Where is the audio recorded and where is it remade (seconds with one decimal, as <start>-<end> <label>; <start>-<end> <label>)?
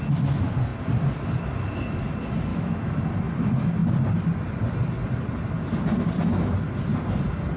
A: 0.0-2.5 recorded; 2.5-3.0 remade; 3.0-7.6 recorded